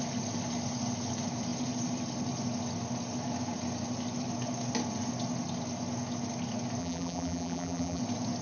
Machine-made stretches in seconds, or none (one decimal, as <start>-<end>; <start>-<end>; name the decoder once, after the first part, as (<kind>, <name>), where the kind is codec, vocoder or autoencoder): 6.8-8.0 (vocoder, BigVGAN v2)